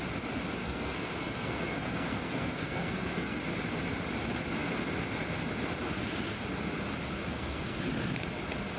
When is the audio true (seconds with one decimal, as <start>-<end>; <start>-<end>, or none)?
0.0-0.6; 3.4-7.2; 7.8-8.8